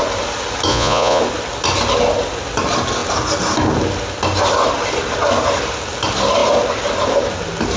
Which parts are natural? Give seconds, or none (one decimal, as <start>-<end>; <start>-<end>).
0.0-0.7; 1.2-7.8